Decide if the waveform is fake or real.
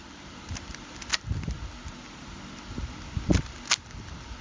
real